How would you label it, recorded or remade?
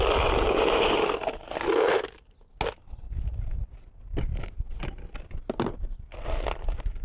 recorded